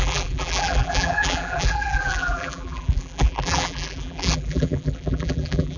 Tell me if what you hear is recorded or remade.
remade